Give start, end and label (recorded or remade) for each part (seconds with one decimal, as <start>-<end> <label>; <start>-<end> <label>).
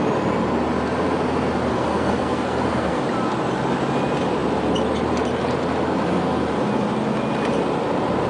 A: 0.0-1.7 recorded; 1.7-3.0 remade; 3.0-8.3 recorded